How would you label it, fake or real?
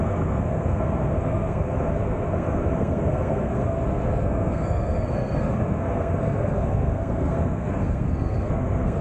fake